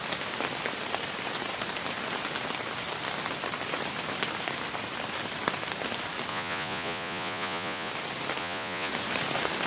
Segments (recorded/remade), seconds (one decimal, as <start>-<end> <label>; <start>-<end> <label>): 0.0-6.3 recorded; 6.3-7.9 remade; 7.9-8.4 recorded; 8.4-8.9 remade; 8.9-9.7 recorded